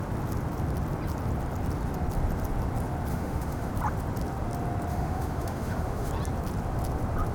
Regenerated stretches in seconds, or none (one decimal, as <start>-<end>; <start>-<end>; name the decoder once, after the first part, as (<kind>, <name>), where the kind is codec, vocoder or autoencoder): 3.1-3.7 (autoencoder, DAC-VAE); 4.9-6.1